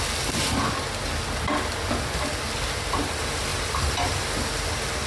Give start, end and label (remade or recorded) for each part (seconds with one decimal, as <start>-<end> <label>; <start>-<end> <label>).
0.0-5.1 recorded